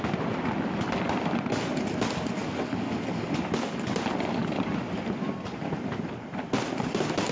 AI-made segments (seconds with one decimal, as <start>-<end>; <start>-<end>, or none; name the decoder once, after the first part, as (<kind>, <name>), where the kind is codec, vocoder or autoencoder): none